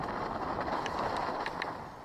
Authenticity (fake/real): real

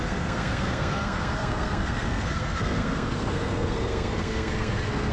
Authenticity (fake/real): fake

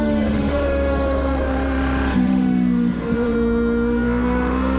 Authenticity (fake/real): fake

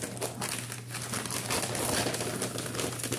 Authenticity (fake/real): real